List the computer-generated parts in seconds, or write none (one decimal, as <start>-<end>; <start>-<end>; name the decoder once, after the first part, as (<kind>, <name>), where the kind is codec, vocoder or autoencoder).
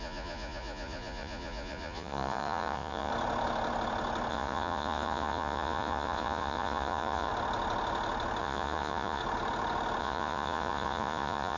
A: 0.0-3.1 (vocoder, Vocos); 4.3-7.3; 8.4-9.2; 10.0-11.6